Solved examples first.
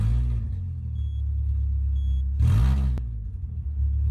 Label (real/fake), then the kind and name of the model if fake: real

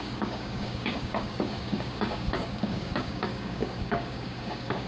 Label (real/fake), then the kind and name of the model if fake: fake, codec, DAC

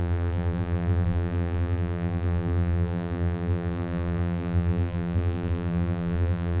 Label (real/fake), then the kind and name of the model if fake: fake, vocoder, BigVGAN v2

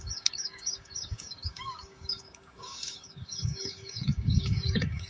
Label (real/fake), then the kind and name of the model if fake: fake, codec, DAC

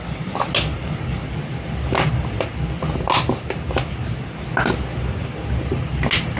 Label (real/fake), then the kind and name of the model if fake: real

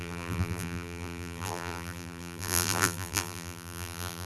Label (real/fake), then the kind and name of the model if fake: fake, vocoder, BigVGAN v2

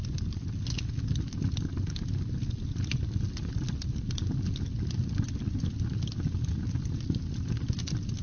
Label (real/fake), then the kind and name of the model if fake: real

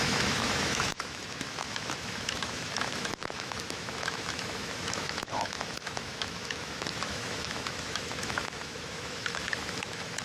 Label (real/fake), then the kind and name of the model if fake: fake, autoencoder, DAC-VAE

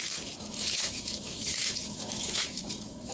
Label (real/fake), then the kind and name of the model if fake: fake, autoencoder, DAC-VAE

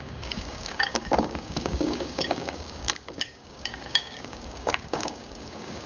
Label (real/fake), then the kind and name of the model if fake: fake, codec, DAC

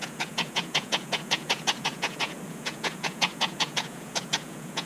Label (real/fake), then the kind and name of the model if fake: fake, vocoder, Vocos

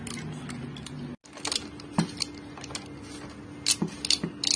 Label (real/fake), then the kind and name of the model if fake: real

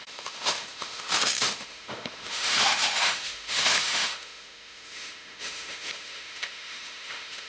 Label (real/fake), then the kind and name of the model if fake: fake, autoencoder, DAC-VAE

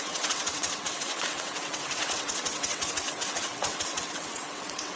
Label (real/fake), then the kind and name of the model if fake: fake, vocoder, WaveNeXt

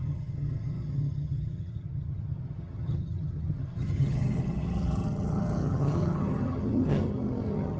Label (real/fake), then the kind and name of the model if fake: fake, vocoder, HiFi-GAN